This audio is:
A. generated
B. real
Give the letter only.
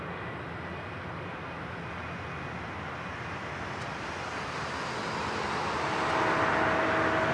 B